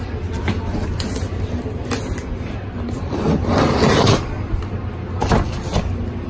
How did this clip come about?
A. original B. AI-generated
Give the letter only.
A